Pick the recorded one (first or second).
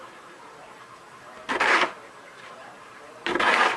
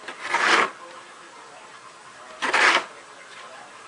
second